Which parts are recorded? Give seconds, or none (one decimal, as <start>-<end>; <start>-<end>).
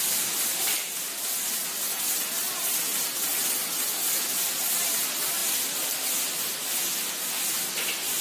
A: 0.0-8.2